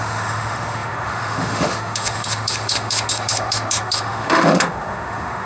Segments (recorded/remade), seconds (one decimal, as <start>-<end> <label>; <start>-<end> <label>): 0.0-5.5 remade